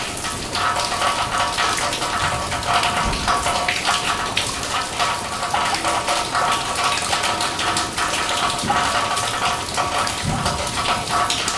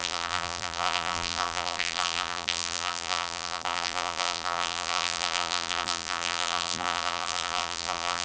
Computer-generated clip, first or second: second